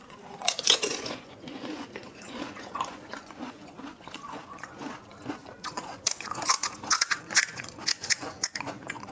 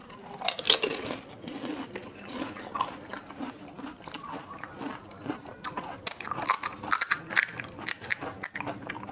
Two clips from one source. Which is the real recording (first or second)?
second